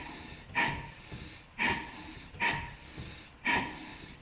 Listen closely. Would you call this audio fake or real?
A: real